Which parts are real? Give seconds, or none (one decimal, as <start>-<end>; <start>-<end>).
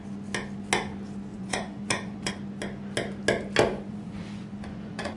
0.0-1.3; 2.3-3.9